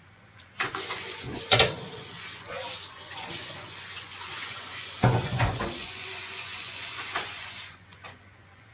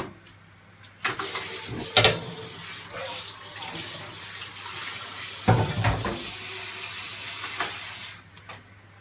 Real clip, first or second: second